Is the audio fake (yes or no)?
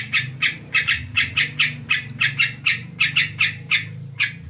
no